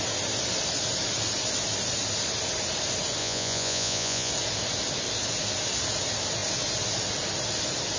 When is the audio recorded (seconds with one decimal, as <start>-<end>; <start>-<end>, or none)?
0.0-3.2; 4.3-8.0